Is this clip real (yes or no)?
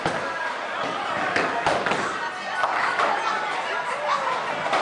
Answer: yes